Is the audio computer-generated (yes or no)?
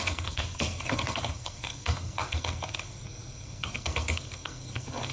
yes